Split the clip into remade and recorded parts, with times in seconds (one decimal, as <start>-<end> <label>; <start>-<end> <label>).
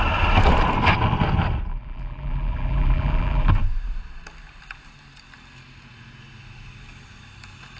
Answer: 0.0-1.7 recorded; 1.7-3.5 remade; 3.5-7.8 recorded